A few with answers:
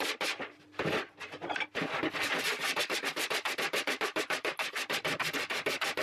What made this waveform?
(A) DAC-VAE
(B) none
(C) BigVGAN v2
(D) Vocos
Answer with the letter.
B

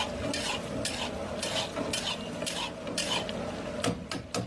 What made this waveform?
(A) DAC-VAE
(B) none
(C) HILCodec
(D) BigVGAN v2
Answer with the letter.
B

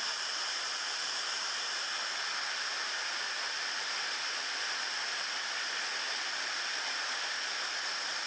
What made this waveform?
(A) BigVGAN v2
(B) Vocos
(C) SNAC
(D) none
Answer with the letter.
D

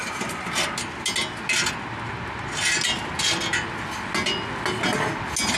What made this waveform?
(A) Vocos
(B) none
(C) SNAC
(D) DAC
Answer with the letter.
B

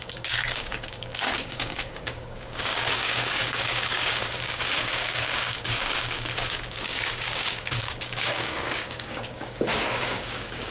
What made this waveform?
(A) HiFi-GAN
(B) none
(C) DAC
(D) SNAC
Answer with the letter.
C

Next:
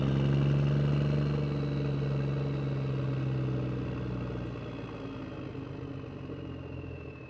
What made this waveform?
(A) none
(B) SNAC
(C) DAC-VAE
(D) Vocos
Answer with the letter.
A